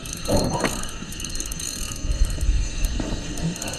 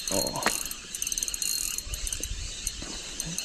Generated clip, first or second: first